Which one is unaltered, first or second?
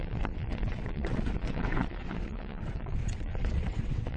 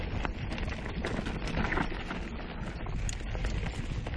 second